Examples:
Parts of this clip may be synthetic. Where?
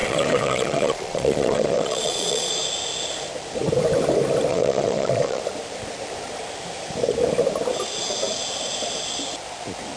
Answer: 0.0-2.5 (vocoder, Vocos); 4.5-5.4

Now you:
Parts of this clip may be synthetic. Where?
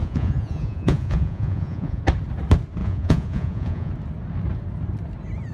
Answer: 0.0-2.0 (vocoder, Vocos); 2.8-3.9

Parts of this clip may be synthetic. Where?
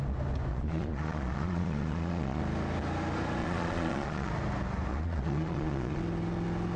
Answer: 0.5-2.4 (vocoder, Vocos); 3.4-4.3; 4.9-6.0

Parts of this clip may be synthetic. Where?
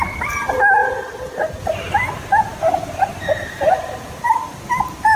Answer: none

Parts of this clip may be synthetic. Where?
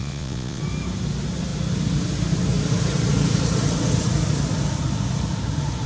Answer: 0.0-0.6 (vocoder, Vocos)